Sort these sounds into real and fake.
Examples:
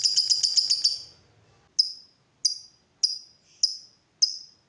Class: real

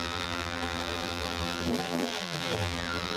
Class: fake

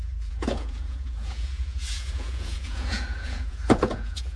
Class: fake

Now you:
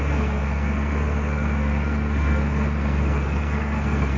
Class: fake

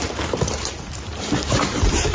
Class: fake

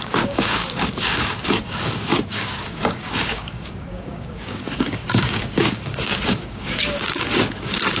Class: fake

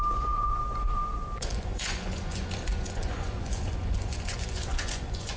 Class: fake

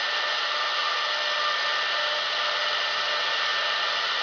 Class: real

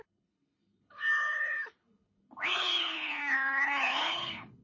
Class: fake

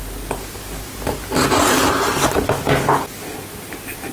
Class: real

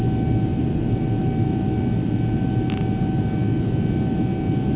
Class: real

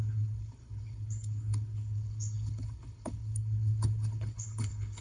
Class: fake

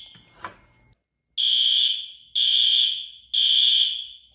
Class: real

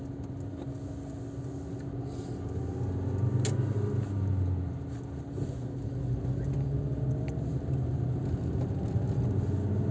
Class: real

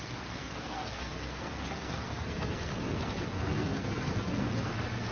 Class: fake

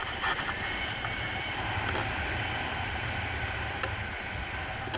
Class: real